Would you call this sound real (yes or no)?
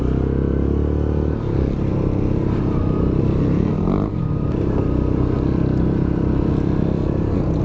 yes